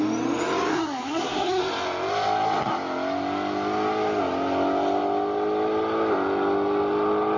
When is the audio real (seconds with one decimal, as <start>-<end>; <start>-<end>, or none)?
0.0-0.7; 1.6-7.4